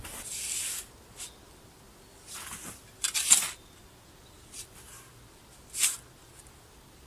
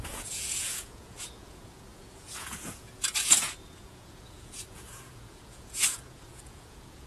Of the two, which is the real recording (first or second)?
first